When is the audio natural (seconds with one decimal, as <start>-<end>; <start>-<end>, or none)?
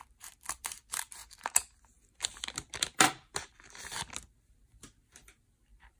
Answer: 1.2-2.3